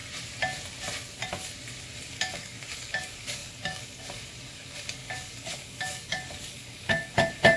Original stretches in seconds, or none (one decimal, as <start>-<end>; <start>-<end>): 0.0-2.1